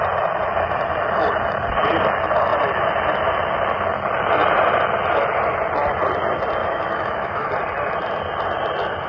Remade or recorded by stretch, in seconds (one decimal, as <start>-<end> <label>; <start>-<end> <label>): 0.0-6.6 recorded; 6.6-7.5 remade; 7.5-9.1 recorded